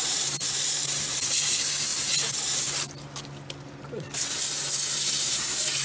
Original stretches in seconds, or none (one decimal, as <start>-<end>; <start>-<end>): 1.9-4.9